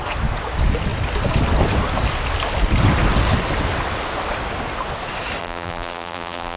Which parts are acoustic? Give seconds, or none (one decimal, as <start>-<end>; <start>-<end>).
0.0-5.4